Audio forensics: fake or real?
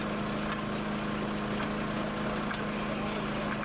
real